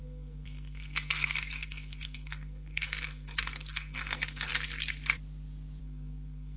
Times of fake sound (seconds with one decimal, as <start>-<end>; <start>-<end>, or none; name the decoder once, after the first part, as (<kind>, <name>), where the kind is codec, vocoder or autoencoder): 0.0-4.5 (codec, SNAC); 5.8-6.6